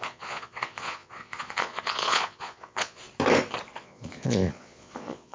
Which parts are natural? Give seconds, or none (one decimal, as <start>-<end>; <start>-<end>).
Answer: 3.0-3.8